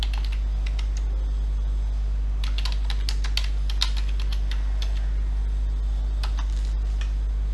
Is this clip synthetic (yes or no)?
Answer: no